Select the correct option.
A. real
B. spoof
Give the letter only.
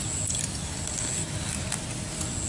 A